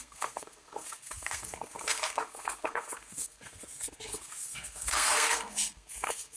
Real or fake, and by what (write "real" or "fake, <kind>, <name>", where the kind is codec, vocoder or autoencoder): fake, codec, SNAC